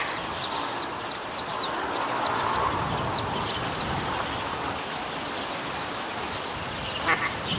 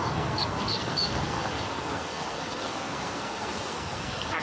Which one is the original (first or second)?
first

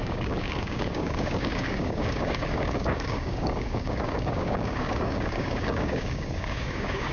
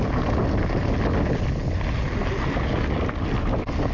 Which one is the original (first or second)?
second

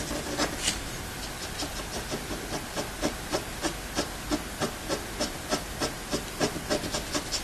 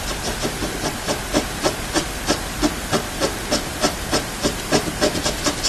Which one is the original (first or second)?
first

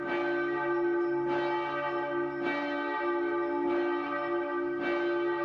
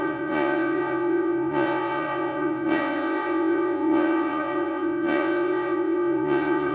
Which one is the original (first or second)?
first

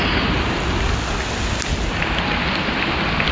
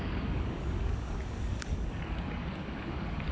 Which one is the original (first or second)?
first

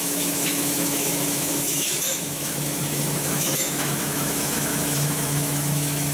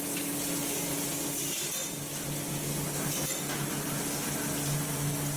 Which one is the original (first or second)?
second